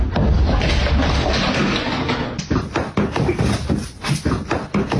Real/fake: real